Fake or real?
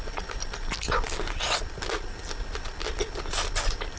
real